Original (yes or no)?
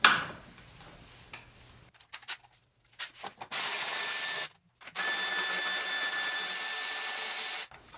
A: yes